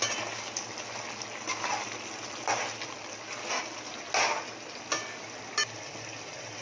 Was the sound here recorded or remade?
recorded